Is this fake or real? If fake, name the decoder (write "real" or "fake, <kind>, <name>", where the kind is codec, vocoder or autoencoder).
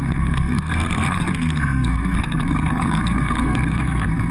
fake, codec, SNAC